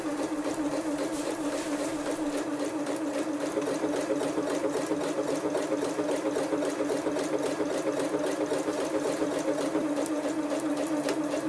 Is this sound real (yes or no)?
yes